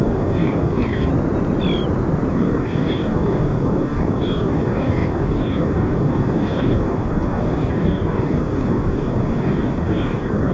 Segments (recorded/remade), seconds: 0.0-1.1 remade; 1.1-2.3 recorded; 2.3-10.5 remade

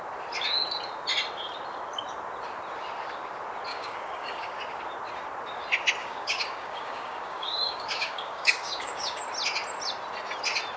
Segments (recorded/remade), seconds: 0.0-3.7 recorded; 3.7-4.6 remade; 4.6-6.0 recorded; 6.0-9.2 remade; 9.2-10.8 recorded